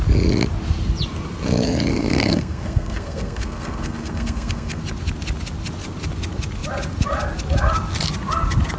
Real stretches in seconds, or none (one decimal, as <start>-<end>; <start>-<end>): 0.0-1.9; 4.8-8.8

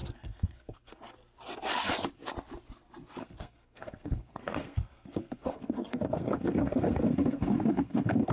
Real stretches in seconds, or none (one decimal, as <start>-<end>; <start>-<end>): 1.0-3.2

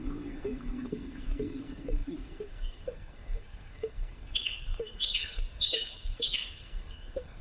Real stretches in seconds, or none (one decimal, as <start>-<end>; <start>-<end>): none

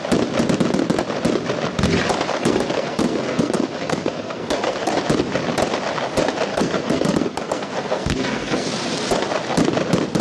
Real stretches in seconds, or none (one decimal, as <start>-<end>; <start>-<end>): 0.0-2.3; 4.9-6.5; 8.7-10.2

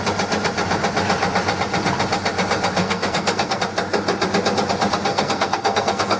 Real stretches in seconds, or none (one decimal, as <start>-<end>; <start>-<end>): 0.0-2.8; 3.6-5.1